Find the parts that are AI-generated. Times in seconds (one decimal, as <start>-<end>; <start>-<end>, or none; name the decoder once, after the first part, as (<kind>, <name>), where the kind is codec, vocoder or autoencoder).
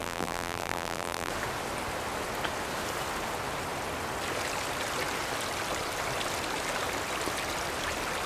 0.0-1.3 (vocoder, BigVGAN v2)